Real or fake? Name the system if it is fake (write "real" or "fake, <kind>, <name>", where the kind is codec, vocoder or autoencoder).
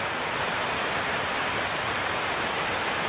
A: real